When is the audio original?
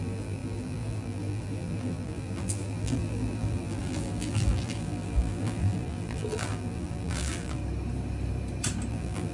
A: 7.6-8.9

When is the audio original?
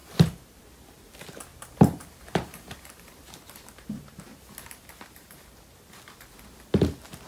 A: 0.6-1.5; 5.9-7.3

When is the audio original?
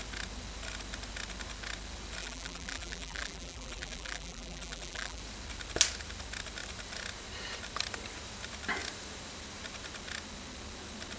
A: 0.0-2.2; 5.2-11.2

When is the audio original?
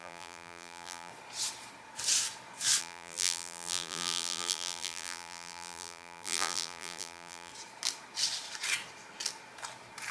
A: 1.1-2.8; 7.5-10.1